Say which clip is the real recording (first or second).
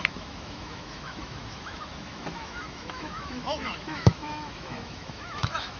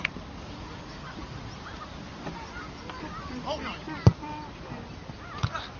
second